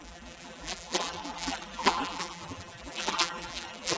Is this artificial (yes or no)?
yes